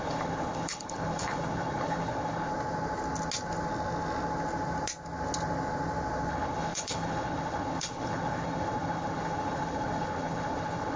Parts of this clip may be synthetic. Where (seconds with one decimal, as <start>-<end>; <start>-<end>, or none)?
0.0-2.5; 6.3-11.0